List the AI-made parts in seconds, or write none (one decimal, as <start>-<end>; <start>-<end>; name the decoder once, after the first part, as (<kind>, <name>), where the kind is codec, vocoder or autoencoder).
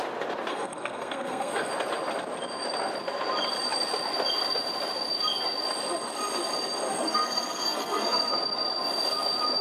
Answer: 0.5-1.7 (codec, SNAC); 6.9-8.3